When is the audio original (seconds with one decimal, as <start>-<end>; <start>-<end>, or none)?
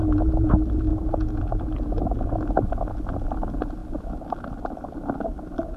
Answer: 0.5-0.9; 1.9-5.8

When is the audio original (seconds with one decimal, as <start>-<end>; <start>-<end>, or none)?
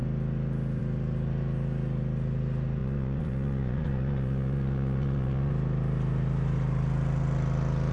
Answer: 0.0-2.8; 5.5-7.9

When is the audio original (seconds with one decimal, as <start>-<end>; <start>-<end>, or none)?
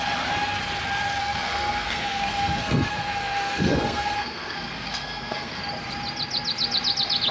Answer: 0.0-1.2; 5.6-7.3